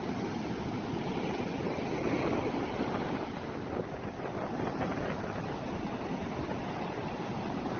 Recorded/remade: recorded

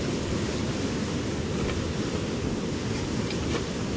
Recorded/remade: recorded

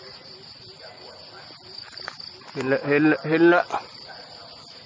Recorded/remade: recorded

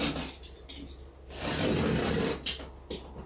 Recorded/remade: recorded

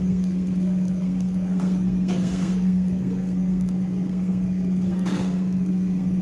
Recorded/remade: remade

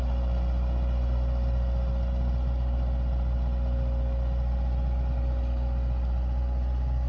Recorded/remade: recorded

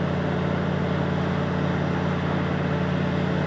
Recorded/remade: recorded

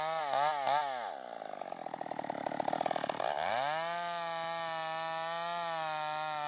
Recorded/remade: recorded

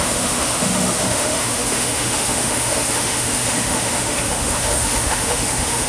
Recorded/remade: remade